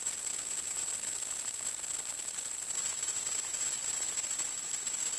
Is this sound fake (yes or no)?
no